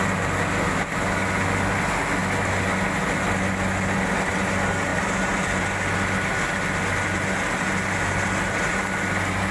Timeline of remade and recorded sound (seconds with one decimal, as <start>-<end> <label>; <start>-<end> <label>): 0.0-4.9 recorded; 4.9-5.6 remade; 5.6-9.5 recorded

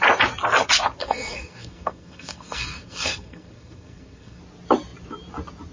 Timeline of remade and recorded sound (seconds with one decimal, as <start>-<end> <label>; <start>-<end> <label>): 0.0-1.0 recorded; 1.0-4.4 remade; 4.4-5.7 recorded

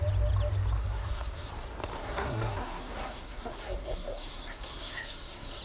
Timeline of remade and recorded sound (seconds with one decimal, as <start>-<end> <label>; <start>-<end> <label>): 0.0-0.8 recorded; 0.8-1.5 remade; 1.5-2.0 recorded; 2.0-5.6 remade